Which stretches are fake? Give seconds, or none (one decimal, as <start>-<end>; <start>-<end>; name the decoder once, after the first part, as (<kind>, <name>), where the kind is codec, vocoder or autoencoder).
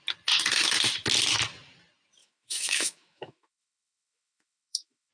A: 2.2-5.1 (autoencoder, DAC-VAE)